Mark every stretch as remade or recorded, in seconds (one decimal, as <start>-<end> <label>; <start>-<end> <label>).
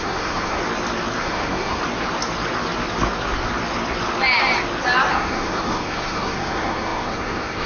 0.0-0.6 remade; 0.6-1.2 recorded; 1.2-1.8 remade; 1.8-5.1 recorded; 5.1-7.7 remade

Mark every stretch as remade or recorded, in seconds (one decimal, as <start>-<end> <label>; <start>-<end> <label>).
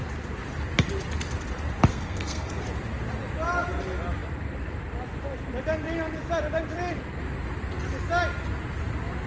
0.0-1.9 recorded; 1.9-2.6 remade; 2.6-9.3 recorded